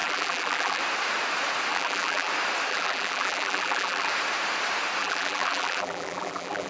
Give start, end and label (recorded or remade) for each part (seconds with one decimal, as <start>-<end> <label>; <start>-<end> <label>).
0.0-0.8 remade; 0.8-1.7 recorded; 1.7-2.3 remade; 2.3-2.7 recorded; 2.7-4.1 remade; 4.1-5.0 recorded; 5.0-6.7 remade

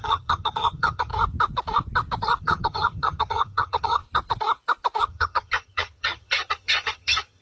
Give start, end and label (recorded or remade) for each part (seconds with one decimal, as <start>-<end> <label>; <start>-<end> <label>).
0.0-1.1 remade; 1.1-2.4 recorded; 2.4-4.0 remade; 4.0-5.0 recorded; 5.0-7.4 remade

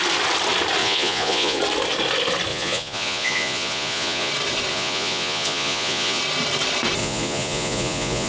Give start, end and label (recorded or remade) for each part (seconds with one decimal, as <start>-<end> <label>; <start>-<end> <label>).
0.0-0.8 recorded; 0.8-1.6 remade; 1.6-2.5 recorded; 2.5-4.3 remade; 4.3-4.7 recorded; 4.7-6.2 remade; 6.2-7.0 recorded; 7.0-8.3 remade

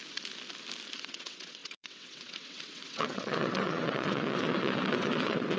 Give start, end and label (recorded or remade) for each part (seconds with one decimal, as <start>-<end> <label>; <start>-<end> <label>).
0.0-1.0 recorded; 1.0-5.6 remade

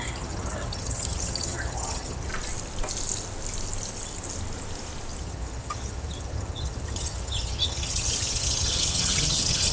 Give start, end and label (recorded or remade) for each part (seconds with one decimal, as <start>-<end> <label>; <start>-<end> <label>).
0.0-2.3 remade; 2.3-5.2 recorded; 5.2-9.7 remade

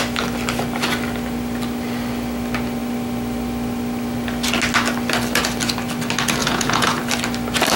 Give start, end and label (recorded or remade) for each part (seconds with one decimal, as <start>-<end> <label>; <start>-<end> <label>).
0.0-6.4 recorded; 6.4-7.0 remade; 7.0-7.8 recorded